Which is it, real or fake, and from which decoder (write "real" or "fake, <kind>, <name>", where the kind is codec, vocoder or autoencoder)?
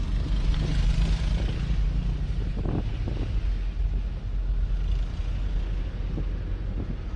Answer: real